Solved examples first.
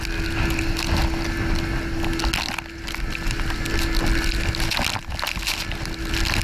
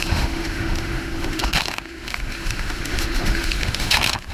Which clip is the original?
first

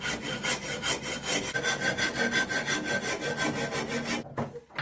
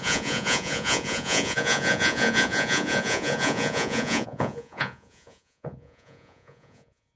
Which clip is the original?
first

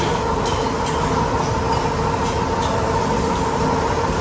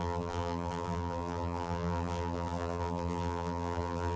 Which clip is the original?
first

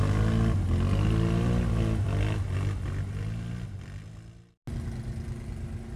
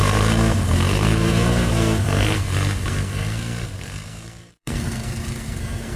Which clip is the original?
first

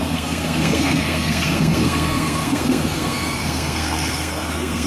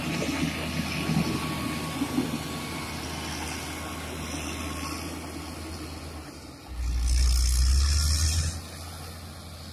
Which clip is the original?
second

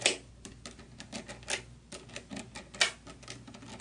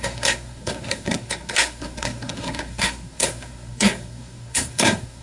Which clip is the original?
first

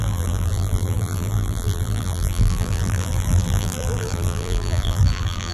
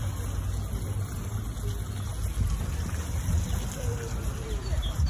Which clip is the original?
second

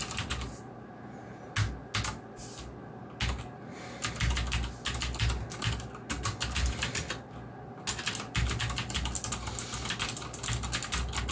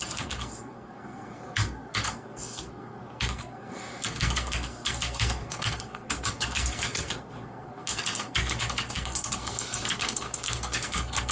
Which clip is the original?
first